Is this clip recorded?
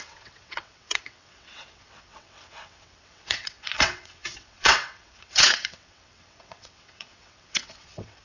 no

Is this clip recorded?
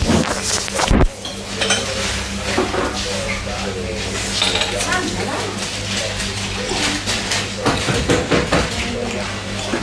yes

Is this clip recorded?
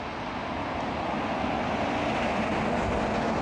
yes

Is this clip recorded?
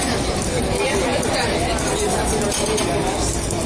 yes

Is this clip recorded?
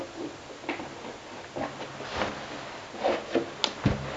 yes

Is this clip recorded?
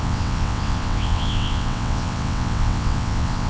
no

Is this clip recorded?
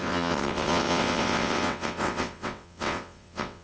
no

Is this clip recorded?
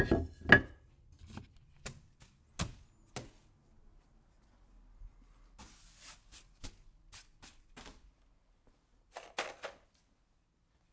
yes